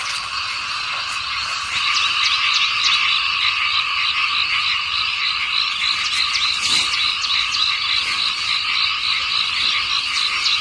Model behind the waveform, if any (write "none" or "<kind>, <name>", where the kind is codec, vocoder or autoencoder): none